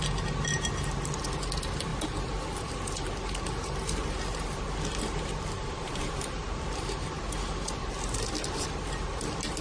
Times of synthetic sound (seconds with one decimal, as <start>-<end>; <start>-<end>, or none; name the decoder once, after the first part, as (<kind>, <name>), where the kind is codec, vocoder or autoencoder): none